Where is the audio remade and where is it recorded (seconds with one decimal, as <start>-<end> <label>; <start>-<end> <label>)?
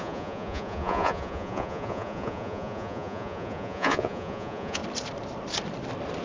0.0-4.8 remade; 4.8-6.2 recorded